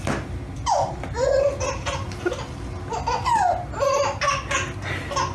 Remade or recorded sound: recorded